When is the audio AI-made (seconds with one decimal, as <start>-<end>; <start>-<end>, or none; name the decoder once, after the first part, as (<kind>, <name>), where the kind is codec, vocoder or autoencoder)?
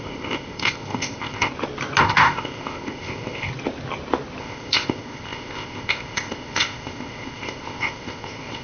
0.0-1.5 (codec, ZipCodec); 2.0-3.5; 4.4-8.6